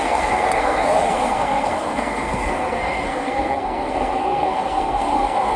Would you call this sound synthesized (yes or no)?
yes